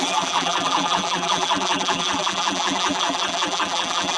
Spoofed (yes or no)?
yes